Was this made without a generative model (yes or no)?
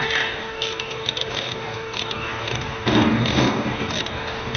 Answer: no